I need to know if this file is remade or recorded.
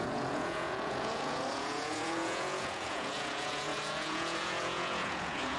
remade